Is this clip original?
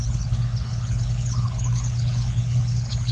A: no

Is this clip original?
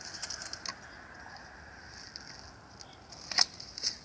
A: yes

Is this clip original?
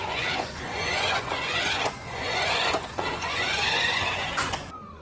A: no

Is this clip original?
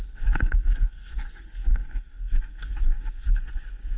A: no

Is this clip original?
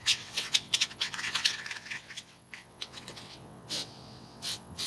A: no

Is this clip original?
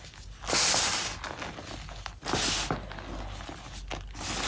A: yes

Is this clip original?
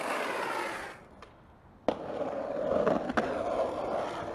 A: yes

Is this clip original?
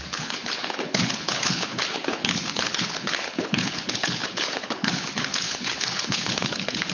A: no